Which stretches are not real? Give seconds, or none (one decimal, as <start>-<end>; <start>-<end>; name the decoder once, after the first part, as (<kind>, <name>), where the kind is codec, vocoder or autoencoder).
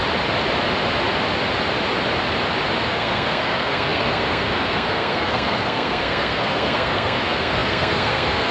2.8-8.5 (codec, SNAC)